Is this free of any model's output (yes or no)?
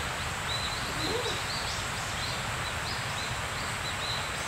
yes